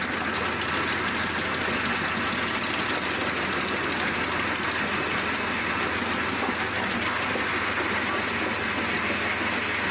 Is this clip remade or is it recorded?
recorded